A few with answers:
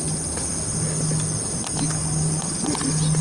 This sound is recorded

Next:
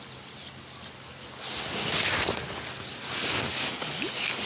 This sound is recorded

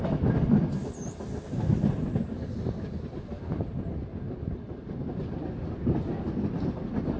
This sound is recorded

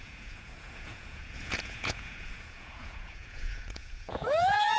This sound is remade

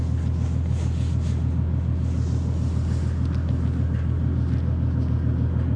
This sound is recorded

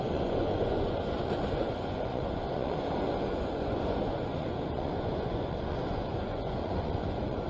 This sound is remade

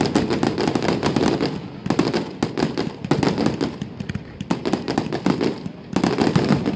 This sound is recorded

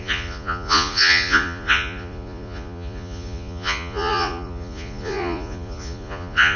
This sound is remade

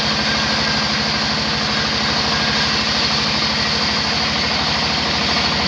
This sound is recorded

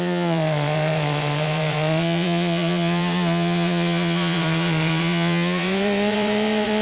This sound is remade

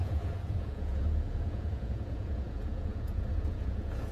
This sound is remade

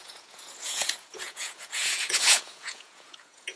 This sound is remade